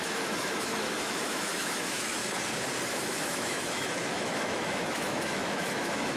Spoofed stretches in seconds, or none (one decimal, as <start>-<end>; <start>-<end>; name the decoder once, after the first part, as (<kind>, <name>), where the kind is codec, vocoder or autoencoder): 0.0-2.2 (autoencoder, DAC-VAE); 2.9-6.2